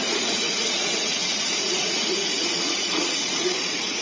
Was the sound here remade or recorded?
remade